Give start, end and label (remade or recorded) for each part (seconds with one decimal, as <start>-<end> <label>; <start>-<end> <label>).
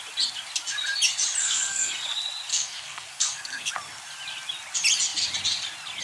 0.0-1.4 recorded; 1.4-1.9 remade; 1.9-2.5 recorded; 2.5-3.7 remade; 3.7-6.0 recorded